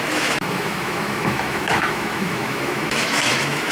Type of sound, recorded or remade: remade